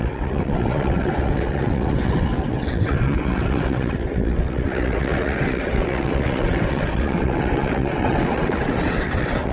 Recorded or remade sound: remade